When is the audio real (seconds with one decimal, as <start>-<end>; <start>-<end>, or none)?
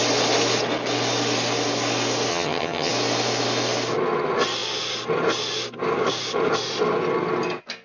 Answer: 0.0-2.3; 2.9-7.8